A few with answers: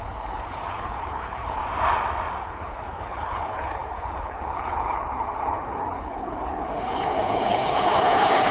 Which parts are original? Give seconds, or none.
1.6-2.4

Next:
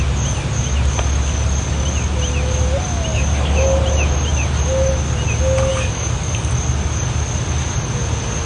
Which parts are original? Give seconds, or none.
0.0-3.1; 3.8-5.7; 6.5-8.5